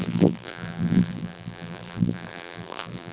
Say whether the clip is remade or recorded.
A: remade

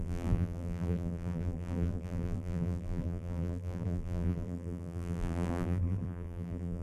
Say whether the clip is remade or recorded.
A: remade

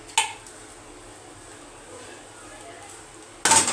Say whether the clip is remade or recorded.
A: recorded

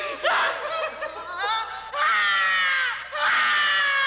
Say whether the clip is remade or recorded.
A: recorded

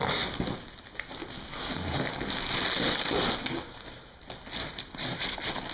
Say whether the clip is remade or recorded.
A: recorded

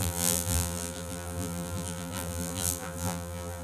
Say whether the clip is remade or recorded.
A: remade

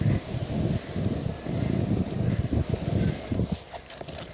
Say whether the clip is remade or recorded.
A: recorded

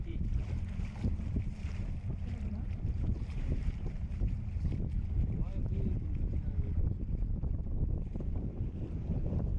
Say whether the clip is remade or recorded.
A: remade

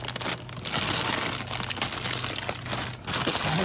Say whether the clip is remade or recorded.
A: recorded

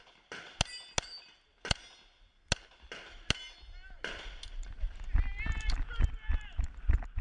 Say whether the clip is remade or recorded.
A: recorded